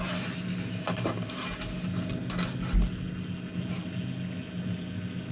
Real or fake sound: real